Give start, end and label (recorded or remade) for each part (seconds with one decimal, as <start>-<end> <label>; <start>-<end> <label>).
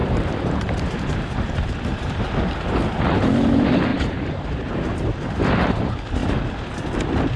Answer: 0.0-2.2 remade; 2.2-3.9 recorded; 3.9-4.8 remade; 4.8-7.4 recorded